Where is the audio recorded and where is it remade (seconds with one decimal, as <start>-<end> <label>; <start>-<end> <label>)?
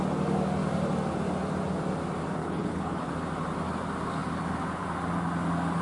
0.0-2.4 recorded; 2.4-3.1 remade; 3.1-5.8 recorded